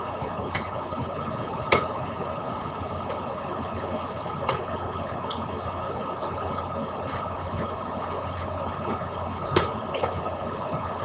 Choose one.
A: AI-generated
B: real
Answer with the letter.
A